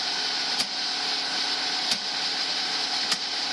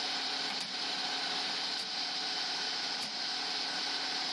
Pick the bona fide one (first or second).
first